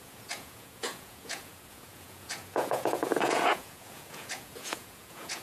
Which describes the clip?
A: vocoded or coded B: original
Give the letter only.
A